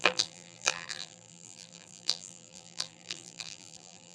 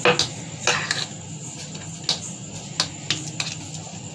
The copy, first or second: first